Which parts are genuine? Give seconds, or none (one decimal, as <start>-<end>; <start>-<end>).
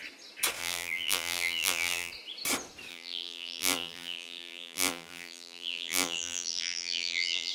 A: 0.0-0.6; 2.1-2.9